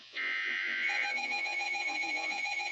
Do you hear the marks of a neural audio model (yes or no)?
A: yes